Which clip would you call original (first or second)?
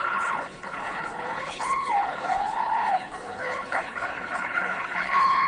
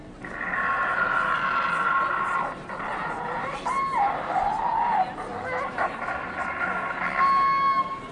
second